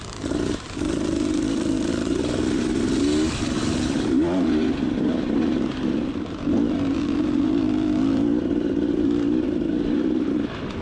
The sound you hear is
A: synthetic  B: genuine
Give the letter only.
A